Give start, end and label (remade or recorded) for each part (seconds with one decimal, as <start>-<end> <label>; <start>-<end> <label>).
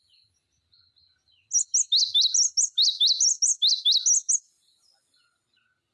0.0-5.9 recorded